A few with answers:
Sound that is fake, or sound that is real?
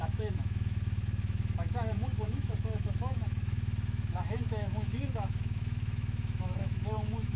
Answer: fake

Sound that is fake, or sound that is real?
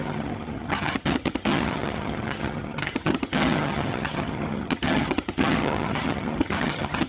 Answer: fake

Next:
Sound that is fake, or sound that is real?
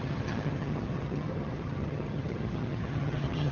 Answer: fake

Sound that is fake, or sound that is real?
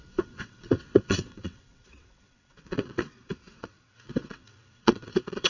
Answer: fake